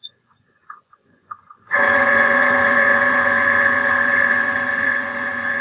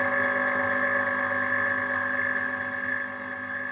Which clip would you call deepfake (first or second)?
first